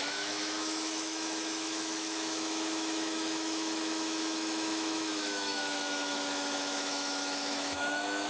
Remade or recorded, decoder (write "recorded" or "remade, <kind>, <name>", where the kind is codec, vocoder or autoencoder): remade, autoencoder, DAC-VAE